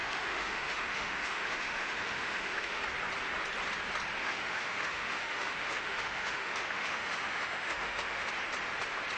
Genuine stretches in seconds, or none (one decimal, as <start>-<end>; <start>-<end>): 2.8-4.2; 8.3-9.2